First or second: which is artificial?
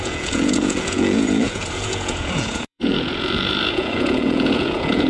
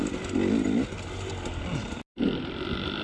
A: first